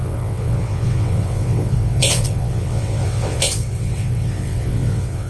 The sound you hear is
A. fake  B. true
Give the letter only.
A